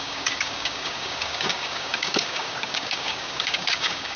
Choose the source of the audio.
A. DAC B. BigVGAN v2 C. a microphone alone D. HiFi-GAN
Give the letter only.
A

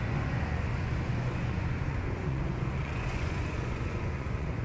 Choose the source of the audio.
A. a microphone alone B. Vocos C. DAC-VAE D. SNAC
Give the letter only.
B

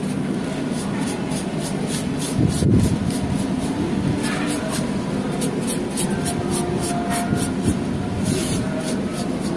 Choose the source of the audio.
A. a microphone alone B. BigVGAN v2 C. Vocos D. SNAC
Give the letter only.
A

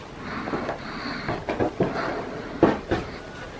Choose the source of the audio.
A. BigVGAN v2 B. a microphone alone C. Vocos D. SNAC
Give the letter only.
B